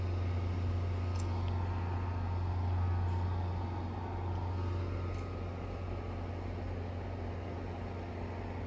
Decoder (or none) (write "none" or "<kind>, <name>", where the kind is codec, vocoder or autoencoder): none